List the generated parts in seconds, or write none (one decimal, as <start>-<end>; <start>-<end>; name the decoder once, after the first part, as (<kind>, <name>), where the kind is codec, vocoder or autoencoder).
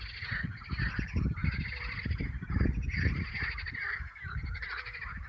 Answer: none